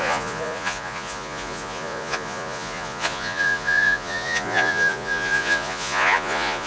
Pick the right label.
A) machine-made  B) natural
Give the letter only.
A